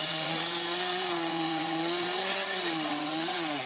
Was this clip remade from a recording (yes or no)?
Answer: yes